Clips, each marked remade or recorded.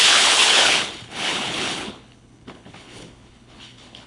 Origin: remade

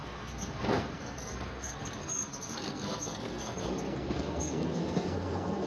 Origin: remade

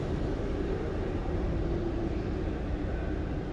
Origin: recorded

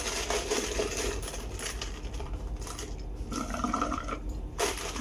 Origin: remade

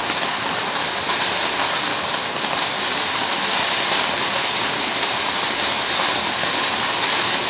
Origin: recorded